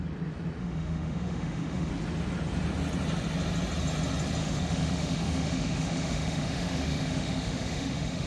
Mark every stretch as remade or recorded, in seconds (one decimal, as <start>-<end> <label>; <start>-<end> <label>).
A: 0.0-0.6 recorded; 0.6-1.9 remade; 1.9-4.4 recorded; 4.4-8.3 remade